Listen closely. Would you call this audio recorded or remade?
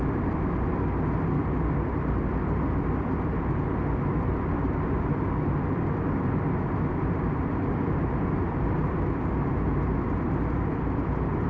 remade